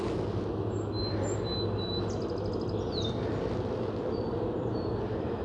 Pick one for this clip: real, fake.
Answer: real